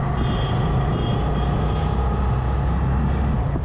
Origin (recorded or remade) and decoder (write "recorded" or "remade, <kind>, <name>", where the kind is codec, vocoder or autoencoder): recorded